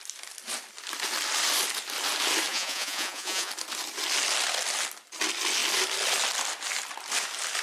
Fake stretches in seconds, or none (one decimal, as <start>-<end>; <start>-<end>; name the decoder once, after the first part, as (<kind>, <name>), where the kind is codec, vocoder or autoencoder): 2.5-3.5 (vocoder, Vocos)